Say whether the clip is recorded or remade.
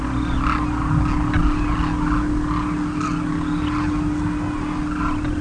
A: recorded